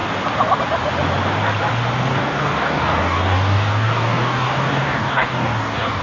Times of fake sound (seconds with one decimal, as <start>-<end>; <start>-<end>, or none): 2.1-6.0